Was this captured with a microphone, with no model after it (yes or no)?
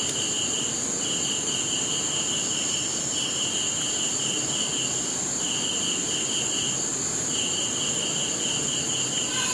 yes